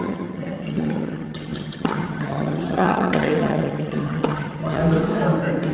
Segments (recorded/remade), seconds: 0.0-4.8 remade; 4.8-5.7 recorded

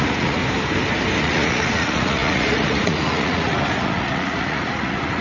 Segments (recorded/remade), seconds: 0.0-0.4 remade; 0.4-1.2 recorded; 1.2-5.2 remade

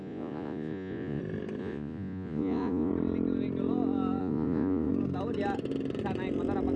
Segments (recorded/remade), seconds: 0.0-1.2 remade; 1.2-1.6 recorded; 1.6-2.9 remade; 2.9-4.2 recorded; 4.2-4.9 remade; 4.9-6.8 recorded

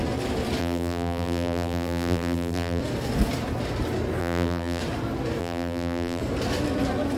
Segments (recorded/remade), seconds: 0.0-0.6 recorded; 0.6-2.8 remade; 2.8-4.2 recorded; 4.2-4.8 remade; 4.8-5.4 recorded; 5.4-6.2 remade; 6.2-7.2 recorded

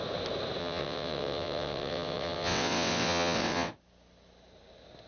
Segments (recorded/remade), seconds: 0.0-0.6 recorded; 0.6-3.7 remade; 3.7-5.1 recorded

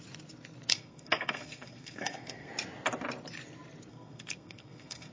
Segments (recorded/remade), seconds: 0.0-0.7 recorded; 0.7-2.5 remade; 2.5-3.9 recorded; 3.9-5.1 remade

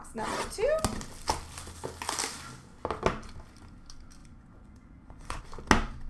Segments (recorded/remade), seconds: 0.0-4.2 recorded; 4.2-5.4 remade; 5.4-6.1 recorded

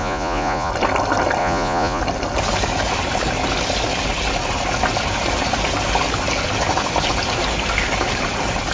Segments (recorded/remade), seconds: 0.0-0.7 remade; 0.7-1.4 recorded; 1.4-2.0 remade; 2.0-8.7 recorded